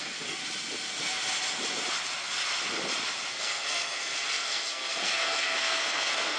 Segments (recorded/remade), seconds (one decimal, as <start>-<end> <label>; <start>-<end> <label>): 0.0-0.4 remade; 0.4-3.3 recorded; 3.3-6.4 remade